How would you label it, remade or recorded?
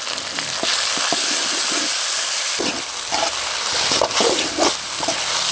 recorded